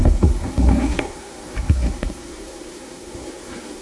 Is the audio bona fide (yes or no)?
no